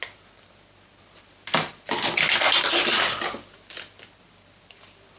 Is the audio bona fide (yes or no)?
yes